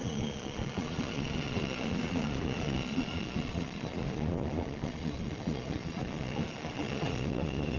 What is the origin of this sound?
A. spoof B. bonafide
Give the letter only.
A